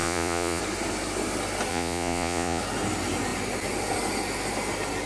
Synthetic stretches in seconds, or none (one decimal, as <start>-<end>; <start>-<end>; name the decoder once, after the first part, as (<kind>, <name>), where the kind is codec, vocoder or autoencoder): 0.0-0.6 (vocoder, Vocos); 1.7-2.6